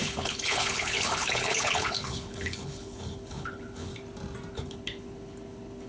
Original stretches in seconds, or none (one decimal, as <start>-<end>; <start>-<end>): 3.9-4.5